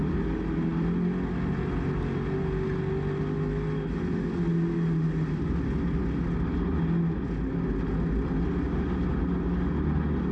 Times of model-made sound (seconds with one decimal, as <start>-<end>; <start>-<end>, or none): none